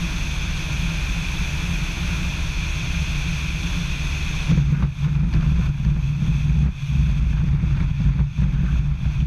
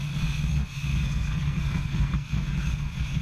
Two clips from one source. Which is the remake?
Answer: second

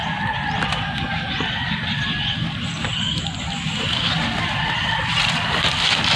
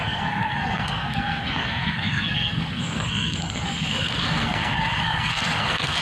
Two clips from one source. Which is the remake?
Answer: second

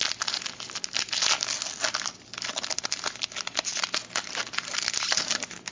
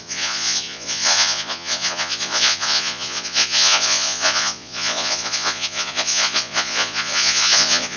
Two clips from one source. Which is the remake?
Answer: second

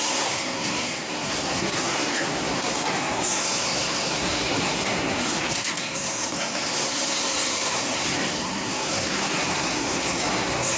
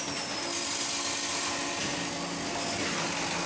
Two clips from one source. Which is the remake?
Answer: first